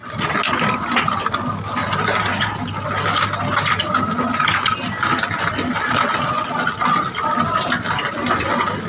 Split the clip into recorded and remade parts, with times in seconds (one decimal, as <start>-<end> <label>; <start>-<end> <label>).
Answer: 0.0-1.8 recorded; 1.8-2.7 remade; 2.7-8.9 recorded